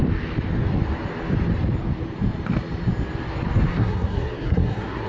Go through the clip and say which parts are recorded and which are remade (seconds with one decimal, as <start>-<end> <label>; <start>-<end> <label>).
0.0-3.7 recorded; 3.7-5.1 remade